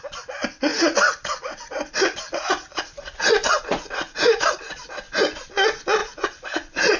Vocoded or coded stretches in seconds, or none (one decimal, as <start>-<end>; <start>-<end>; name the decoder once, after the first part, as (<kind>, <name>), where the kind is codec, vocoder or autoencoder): 0.7-4.9 (vocoder, Vocos); 6.0-7.0